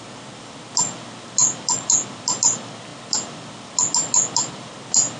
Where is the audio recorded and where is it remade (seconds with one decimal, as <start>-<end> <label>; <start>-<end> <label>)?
0.0-5.2 recorded

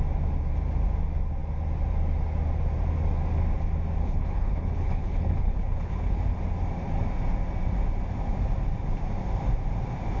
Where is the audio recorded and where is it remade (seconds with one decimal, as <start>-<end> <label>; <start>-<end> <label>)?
0.0-4.0 recorded; 4.0-6.2 remade; 6.2-10.2 recorded